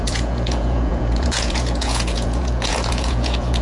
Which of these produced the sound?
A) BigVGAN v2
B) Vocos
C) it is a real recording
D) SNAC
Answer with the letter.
B